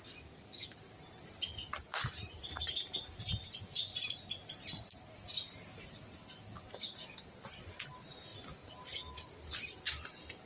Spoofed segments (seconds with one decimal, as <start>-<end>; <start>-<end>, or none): 1.9-4.8